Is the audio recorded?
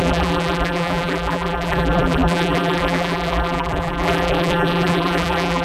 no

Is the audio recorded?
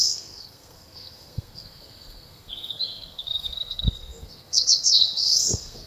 no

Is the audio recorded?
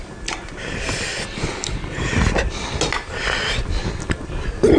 yes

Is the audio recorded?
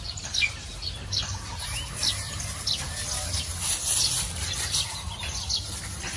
yes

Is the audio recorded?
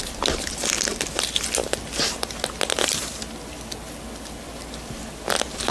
yes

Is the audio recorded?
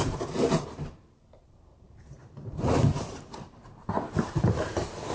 no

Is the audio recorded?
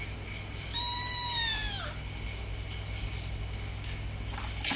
yes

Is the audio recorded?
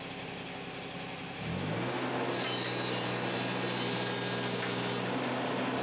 yes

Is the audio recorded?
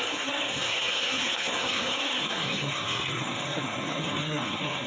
no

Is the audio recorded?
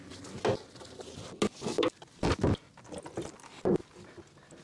yes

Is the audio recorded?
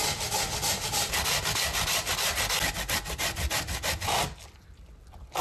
yes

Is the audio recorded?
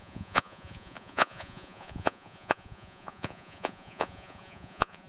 no